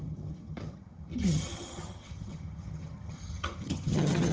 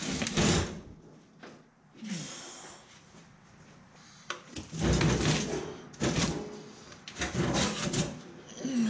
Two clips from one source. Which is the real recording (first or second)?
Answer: second